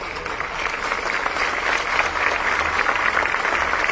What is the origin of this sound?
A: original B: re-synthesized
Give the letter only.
A